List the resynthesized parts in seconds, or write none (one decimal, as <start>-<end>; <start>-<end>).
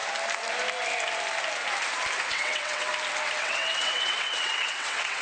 2.3-2.9; 3.4-5.2